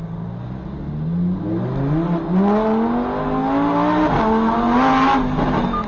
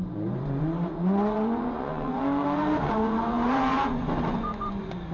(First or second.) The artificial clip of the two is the second